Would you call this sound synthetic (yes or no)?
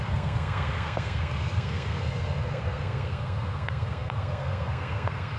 yes